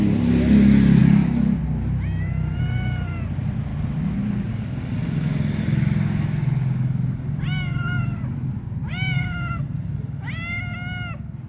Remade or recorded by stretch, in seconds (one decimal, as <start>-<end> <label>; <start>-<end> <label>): 0.0-11.5 recorded